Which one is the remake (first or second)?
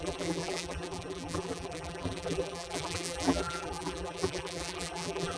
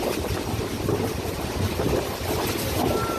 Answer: first